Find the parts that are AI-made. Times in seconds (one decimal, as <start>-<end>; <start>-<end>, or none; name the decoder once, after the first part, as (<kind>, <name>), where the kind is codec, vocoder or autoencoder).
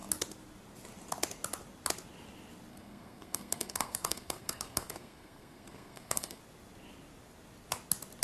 2.7-6.4 (codec, SNAC)